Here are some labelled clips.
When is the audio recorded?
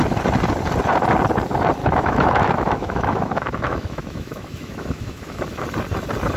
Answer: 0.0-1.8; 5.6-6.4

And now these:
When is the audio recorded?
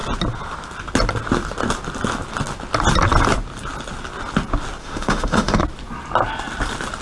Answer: 0.0-4.8; 5.6-7.0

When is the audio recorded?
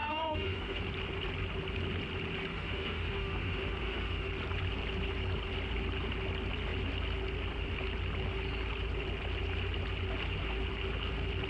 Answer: 0.8-2.5; 4.3-11.5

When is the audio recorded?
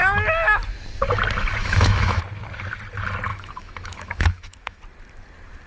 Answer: 0.0-1.6; 2.2-3.3; 4.8-5.7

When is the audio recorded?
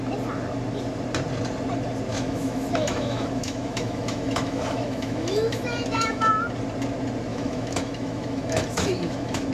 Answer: 0.0-2.1; 6.3-7.3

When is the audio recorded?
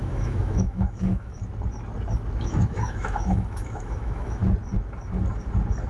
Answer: 1.4-2.4; 4.4-5.9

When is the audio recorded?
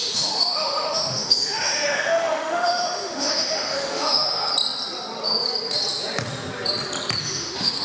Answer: 4.5-7.2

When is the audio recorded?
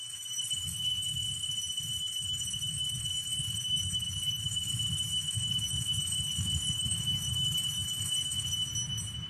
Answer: 1.2-2.0; 8.5-9.3